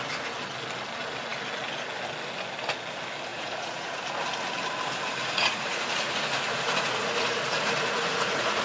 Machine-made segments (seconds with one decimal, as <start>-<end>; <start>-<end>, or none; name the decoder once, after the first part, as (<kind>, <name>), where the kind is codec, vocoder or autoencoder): 3.3-4.0 (vocoder, Vocos); 5.2-8.6